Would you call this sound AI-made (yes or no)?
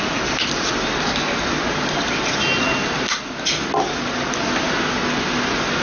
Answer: no